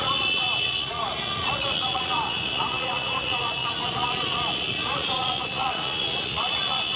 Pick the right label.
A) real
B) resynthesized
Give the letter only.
B